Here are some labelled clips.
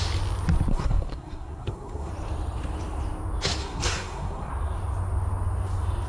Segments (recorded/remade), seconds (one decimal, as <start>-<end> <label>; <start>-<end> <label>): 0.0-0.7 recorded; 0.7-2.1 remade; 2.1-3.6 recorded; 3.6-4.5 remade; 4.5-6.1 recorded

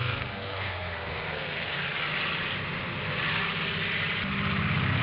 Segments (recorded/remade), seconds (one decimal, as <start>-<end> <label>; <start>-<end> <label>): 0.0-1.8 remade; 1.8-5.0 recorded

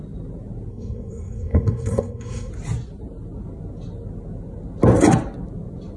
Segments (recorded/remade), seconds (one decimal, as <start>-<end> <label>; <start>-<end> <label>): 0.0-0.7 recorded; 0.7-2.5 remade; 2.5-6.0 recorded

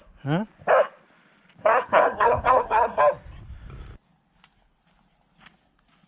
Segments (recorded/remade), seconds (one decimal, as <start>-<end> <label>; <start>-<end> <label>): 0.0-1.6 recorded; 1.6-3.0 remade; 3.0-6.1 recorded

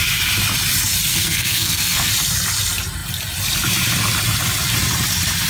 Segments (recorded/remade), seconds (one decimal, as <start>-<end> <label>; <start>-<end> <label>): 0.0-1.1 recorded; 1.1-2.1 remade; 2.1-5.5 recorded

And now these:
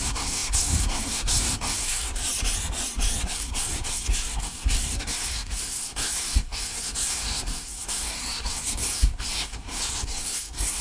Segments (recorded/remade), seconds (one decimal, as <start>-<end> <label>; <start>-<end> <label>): 0.0-2.2 remade; 2.2-3.2 recorded; 3.2-10.8 remade

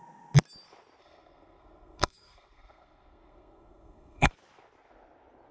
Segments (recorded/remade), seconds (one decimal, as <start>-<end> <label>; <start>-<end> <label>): 0.0-1.0 recorded; 1.0-4.3 remade; 4.3-5.5 recorded